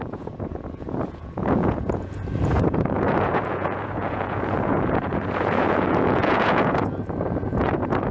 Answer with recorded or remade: remade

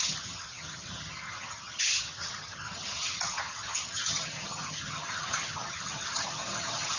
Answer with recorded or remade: remade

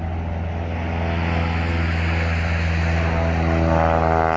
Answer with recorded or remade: recorded